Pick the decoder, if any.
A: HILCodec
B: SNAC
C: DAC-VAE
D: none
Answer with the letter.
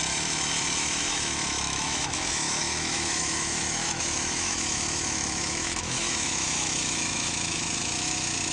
C